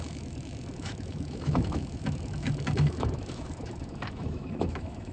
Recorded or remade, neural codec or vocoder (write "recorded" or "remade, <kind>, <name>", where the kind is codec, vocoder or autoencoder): remade, autoencoder, DAC-VAE